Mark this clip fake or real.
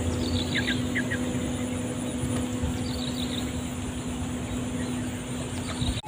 real